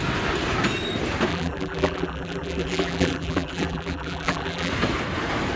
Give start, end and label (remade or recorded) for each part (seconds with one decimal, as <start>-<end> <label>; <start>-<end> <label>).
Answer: 0.0-1.3 recorded; 1.3-4.7 remade; 4.7-5.6 recorded